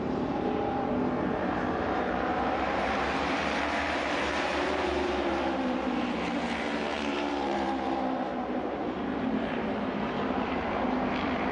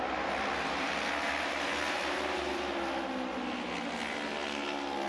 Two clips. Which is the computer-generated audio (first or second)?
first